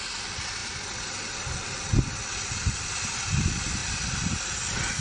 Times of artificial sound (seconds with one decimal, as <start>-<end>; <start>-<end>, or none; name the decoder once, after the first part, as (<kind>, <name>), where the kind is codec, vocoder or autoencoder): 0.6-2.6 (vocoder, BigVGAN v2)